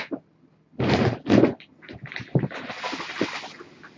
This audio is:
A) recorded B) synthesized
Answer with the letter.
A